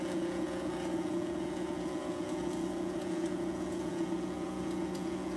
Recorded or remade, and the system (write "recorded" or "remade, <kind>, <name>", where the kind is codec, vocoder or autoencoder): remade, vocoder, Vocos